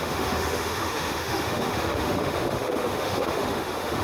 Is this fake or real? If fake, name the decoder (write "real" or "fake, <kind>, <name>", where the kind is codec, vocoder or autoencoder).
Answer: fake, autoencoder, DAC-VAE